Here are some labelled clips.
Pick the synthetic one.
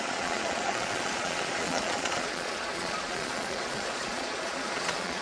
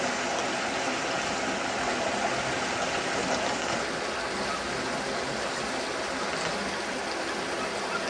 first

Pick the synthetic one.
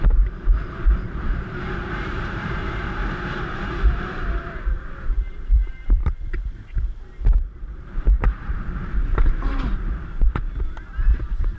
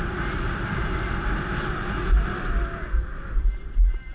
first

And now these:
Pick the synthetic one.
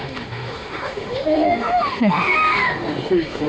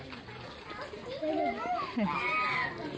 first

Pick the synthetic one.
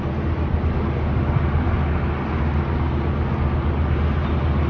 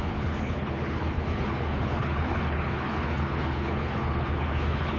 second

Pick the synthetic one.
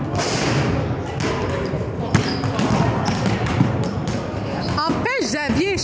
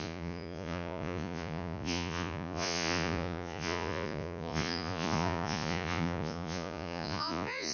second